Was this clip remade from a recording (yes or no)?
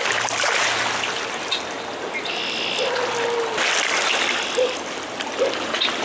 no